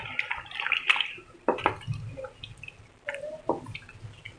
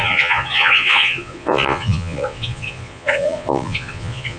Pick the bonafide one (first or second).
first